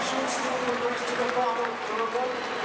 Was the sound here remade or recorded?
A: recorded